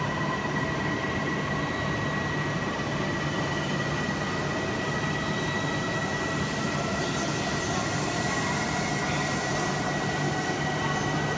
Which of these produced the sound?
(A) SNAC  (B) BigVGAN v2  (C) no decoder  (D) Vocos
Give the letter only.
C